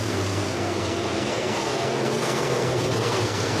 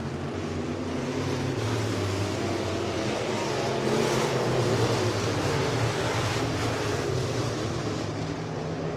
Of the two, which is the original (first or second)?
second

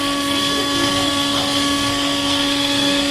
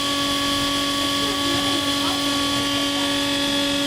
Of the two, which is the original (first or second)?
second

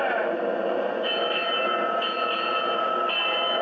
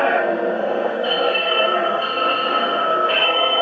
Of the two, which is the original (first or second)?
first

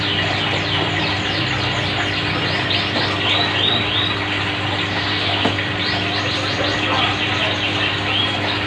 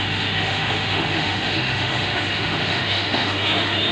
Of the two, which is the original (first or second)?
first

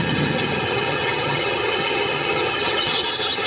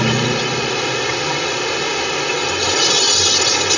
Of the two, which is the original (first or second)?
second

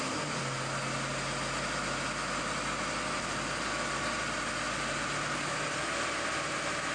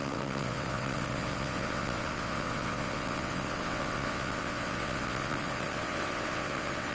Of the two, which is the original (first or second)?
first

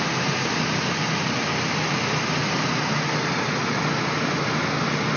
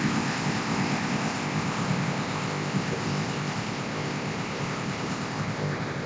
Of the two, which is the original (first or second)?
first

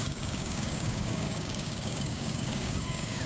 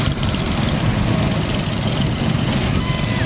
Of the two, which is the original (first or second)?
second